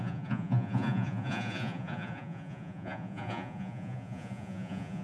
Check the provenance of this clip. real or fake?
fake